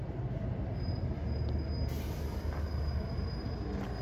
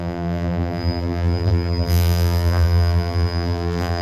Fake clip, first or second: second